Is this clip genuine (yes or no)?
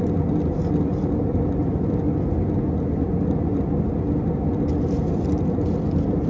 yes